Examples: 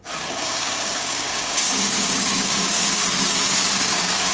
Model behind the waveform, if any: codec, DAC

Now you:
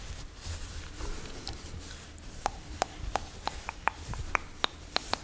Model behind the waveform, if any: none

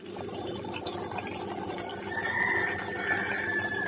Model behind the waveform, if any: none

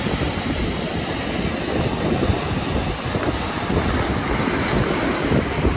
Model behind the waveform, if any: none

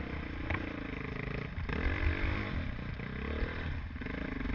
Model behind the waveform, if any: none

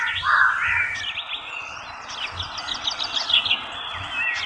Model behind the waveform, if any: none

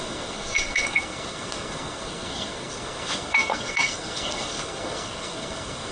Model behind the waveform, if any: codec, SNAC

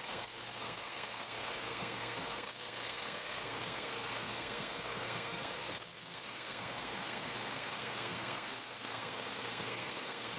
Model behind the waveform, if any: codec, SNAC